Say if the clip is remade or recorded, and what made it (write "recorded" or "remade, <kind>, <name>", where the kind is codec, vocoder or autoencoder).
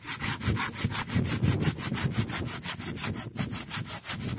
recorded